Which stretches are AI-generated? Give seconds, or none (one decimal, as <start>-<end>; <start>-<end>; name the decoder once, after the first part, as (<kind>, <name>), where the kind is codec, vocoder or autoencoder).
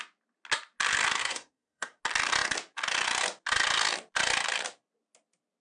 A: 1.2-2.0 (codec, SNAC)